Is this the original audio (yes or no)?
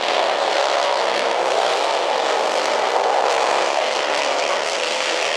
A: no